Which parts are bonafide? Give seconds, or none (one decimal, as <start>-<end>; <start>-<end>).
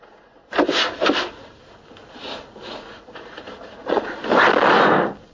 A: 0.4-2.9; 4.2-5.3